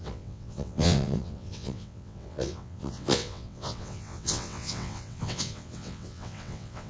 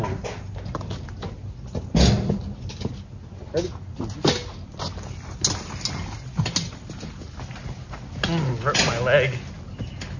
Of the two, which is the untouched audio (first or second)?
second